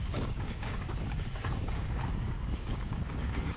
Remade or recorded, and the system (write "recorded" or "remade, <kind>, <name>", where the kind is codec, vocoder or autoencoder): remade, codec, DAC